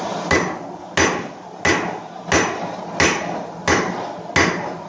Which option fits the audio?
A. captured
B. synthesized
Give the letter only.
A